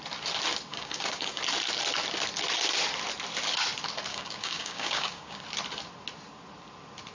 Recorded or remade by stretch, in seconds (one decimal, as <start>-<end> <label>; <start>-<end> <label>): 0.0-0.7 recorded; 0.7-1.4 remade; 1.4-4.1 recorded; 4.1-5.4 remade; 5.4-7.1 recorded